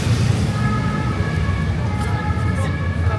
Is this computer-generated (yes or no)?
no